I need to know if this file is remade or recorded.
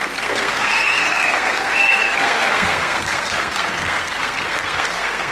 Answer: remade